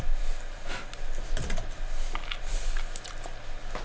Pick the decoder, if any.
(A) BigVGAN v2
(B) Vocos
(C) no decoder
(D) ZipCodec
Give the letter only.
C